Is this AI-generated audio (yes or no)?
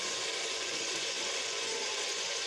yes